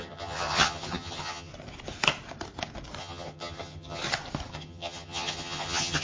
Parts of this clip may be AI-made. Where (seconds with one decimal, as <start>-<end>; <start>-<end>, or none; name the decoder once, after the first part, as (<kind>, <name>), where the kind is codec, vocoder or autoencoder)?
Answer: 0.0-1.5 (vocoder, HiFi-GAN); 3.0-4.0; 4.5-6.0